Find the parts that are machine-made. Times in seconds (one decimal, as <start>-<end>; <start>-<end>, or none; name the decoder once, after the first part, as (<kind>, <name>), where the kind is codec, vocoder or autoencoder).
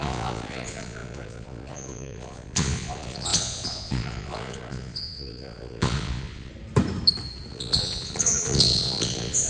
0.0-6.5 (vocoder, Vocos); 7.5-9.5